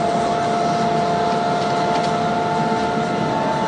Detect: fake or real real